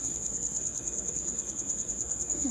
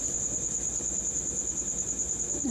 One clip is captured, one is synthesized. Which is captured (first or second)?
second